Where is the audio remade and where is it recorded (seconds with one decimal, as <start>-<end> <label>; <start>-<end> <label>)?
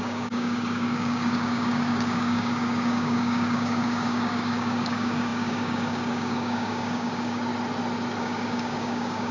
0.0-7.5 remade; 7.5-8.2 recorded; 8.2-9.3 remade